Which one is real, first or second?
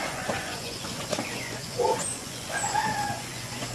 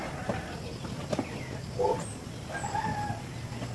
second